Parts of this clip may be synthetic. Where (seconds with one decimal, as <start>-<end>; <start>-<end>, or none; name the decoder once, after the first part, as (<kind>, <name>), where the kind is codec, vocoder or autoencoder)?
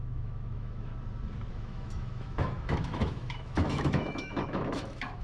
0.0-0.9 (autoencoder, DAC-VAE); 1.5-5.2